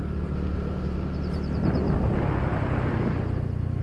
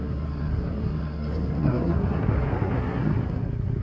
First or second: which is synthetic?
second